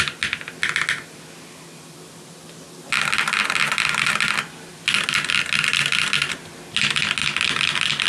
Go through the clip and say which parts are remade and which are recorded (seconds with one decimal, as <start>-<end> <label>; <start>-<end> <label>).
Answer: 0.0-8.1 recorded